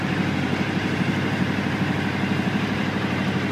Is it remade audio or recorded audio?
remade